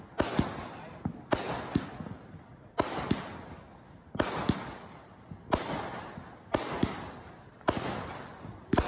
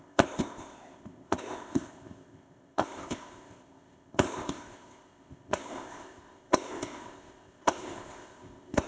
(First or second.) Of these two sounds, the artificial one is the second